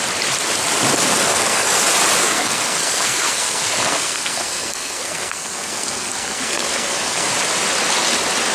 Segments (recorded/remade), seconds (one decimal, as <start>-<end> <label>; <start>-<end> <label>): 0.0-1.3 recorded; 1.3-1.8 remade; 1.8-2.2 recorded; 2.2-7.3 remade; 7.3-8.5 recorded